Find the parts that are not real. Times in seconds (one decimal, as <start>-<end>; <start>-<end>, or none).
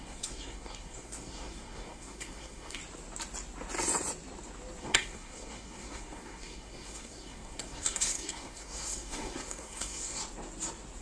0.0-2.8; 4.8-10.2